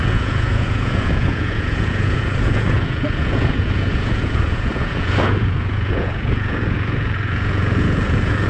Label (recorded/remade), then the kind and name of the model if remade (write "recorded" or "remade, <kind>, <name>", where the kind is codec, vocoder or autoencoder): remade, vocoder, Vocos